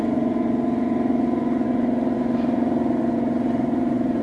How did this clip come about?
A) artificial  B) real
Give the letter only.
A